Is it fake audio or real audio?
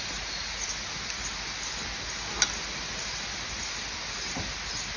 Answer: real